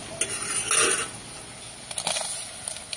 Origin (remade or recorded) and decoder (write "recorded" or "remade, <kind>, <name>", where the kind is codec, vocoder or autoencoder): recorded